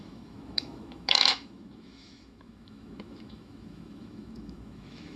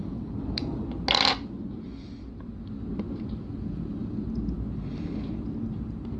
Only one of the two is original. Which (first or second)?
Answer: second